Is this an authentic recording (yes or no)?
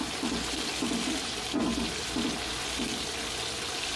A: yes